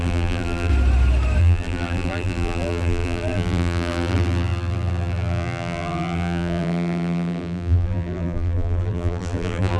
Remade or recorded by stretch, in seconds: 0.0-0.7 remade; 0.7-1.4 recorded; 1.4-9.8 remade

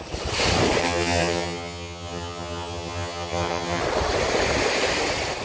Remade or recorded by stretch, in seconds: 0.0-0.8 recorded; 0.8-3.8 remade; 3.8-5.4 recorded

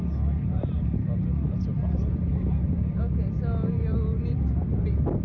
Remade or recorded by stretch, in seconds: 0.0-5.2 recorded

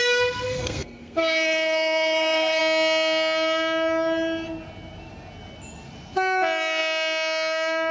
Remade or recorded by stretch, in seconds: 0.0-2.6 remade; 2.6-7.9 recorded

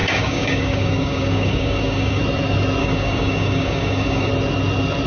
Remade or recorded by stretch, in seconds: 0.0-2.2 remade; 2.2-2.8 recorded; 2.8-4.3 remade; 4.3-5.1 recorded

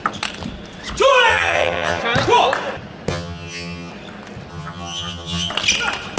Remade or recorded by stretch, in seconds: 0.0-1.3 recorded; 1.3-2.0 remade; 2.0-3.1 recorded; 3.1-3.9 remade; 3.9-4.5 recorded; 4.5-5.5 remade; 5.5-6.2 recorded

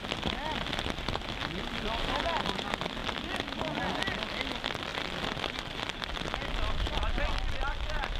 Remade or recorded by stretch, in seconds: 0.0-1.4 recorded; 1.4-2.0 remade; 2.0-4.9 recorded; 4.9-6.1 remade; 6.1-8.2 recorded